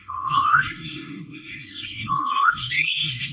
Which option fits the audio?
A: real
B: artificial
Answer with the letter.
B